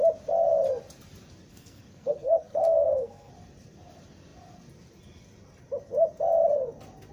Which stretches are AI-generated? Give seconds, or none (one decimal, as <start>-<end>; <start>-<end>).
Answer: 1.5-3.3